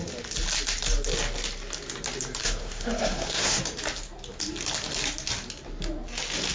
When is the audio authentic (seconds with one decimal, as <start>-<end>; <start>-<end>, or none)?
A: 0.0-2.4; 3.6-6.5